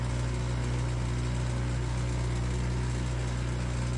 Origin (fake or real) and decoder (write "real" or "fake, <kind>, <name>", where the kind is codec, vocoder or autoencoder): real